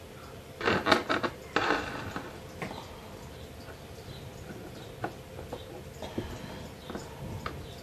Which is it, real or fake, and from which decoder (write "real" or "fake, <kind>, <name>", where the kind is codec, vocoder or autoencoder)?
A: real